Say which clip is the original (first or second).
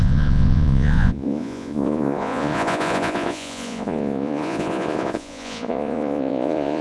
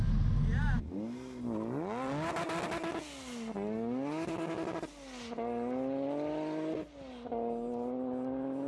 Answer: second